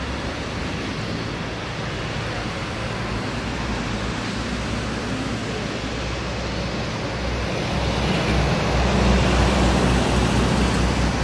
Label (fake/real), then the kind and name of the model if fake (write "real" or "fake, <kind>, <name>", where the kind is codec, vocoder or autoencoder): real